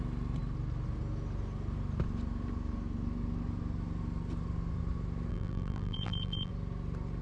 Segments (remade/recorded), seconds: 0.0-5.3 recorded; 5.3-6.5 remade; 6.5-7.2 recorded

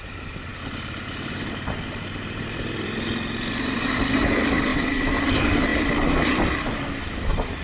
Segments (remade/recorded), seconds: 0.0-4.7 remade; 4.7-5.3 recorded; 5.3-5.7 remade; 5.7-7.0 recorded; 7.0-7.6 remade